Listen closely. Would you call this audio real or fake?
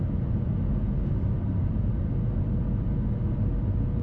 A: real